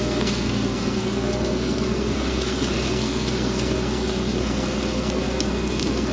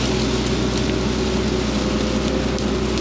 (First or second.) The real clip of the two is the second